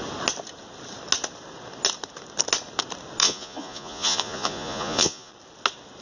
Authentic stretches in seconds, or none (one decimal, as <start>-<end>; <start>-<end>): 0.0-3.2; 5.3-6.0